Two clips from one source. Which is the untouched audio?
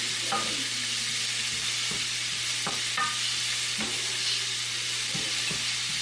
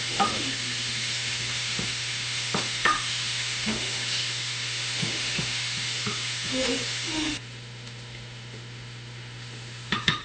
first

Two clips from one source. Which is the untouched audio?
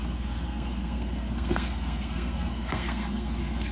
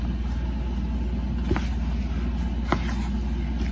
second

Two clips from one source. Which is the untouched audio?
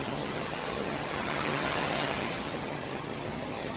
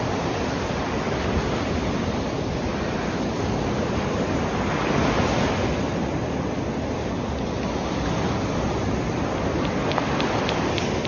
second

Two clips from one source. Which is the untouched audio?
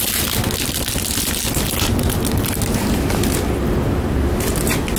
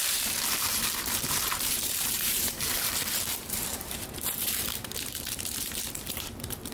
first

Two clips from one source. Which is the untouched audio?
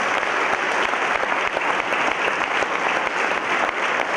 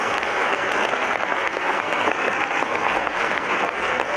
first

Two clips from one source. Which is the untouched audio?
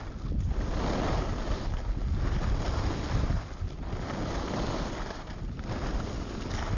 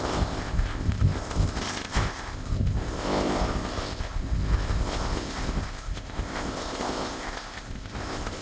first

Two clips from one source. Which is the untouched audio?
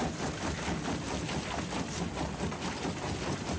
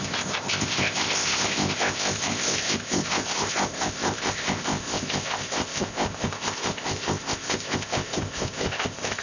first